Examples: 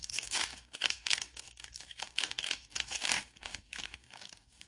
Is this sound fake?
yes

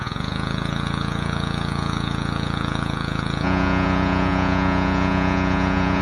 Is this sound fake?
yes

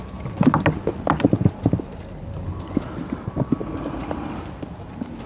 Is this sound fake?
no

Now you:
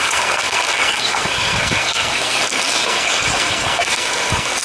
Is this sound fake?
yes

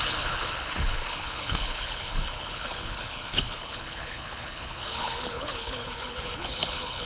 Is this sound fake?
yes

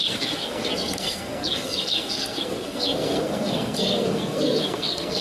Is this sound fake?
yes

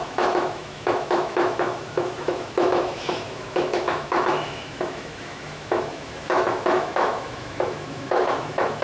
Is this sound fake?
yes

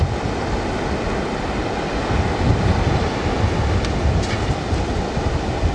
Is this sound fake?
no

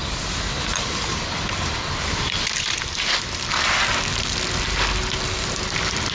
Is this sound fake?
no